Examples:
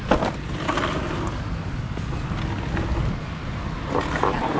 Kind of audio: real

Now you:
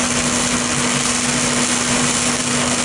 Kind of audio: real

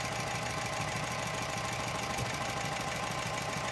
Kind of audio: real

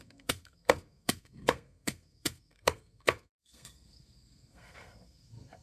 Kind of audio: fake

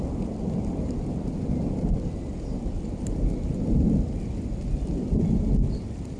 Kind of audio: real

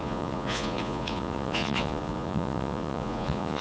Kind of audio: fake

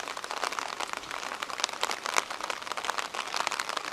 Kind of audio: real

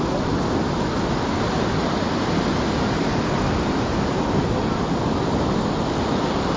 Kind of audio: real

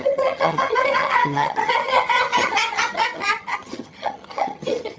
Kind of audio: fake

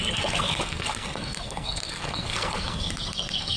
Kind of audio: fake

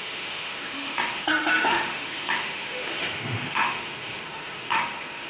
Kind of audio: fake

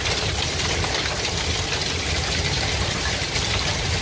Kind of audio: real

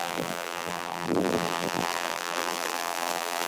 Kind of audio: fake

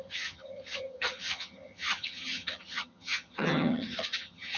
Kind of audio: fake